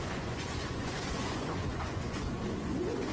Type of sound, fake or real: fake